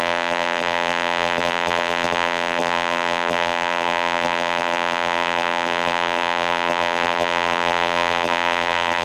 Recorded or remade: remade